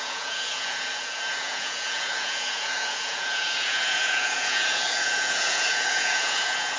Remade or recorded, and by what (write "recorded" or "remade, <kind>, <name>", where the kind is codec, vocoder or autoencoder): remade, vocoder, Vocos